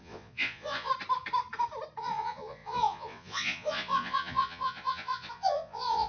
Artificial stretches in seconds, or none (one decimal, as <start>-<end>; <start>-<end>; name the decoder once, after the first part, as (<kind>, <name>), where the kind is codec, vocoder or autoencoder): 0.0-0.9 (vocoder, Vocos); 2.0-6.1

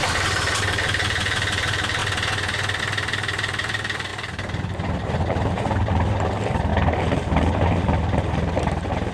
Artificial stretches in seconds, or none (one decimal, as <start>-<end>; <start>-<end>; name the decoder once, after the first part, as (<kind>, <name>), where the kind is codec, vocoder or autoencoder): 0.0-2.0 (vocoder, BigVGAN v2); 2.8-9.1

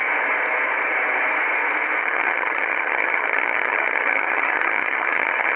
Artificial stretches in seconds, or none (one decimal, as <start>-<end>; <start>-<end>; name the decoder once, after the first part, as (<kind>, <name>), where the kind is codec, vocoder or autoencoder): 2.0-5.6 (vocoder, HiFi-GAN)

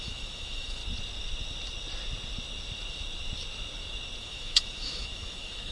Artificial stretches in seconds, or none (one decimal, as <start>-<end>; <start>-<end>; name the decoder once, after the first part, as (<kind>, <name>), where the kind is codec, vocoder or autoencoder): 0.0-0.8 (autoencoder, DAC-VAE); 4.2-5.7

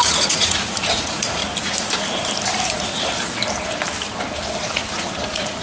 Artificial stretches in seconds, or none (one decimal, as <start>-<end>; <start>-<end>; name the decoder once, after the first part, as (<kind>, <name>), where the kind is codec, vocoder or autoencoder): 0.0-1.4 (vocoder, Vocos); 4.7-5.6

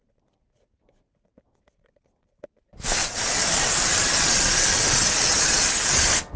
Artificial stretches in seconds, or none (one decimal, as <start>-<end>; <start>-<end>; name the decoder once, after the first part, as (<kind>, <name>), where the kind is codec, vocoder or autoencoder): 3.0-5.7 (vocoder, Vocos)

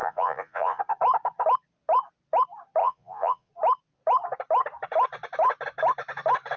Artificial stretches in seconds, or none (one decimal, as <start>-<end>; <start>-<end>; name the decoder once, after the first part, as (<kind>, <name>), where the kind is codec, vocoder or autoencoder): 0.0-0.8 (vocoder, Vocos); 2.8-3.5